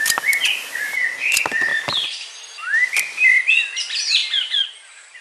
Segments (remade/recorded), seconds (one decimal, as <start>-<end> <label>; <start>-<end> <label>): 0.0-5.2 recorded